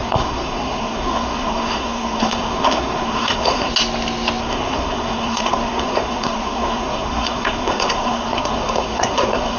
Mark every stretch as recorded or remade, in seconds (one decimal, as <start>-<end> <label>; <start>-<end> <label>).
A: 0.0-3.7 remade; 3.7-4.4 recorded; 4.4-9.6 remade